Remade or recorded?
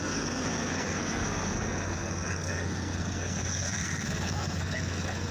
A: remade